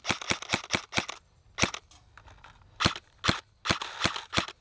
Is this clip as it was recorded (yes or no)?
yes